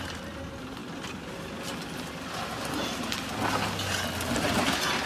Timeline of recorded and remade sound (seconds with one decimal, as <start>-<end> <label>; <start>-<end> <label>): 0.0-5.1 recorded